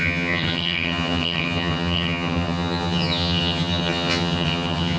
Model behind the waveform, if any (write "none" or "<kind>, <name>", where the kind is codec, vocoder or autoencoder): vocoder, HiFi-GAN